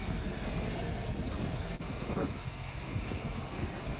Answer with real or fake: fake